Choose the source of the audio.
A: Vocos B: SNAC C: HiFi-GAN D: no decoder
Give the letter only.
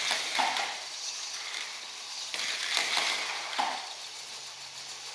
D